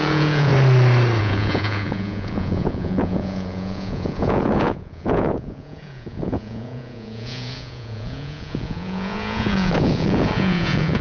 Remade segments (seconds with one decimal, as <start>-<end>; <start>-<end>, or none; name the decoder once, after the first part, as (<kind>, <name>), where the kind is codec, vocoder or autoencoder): 0.0-0.5 (vocoder, Vocos); 1.2-11.0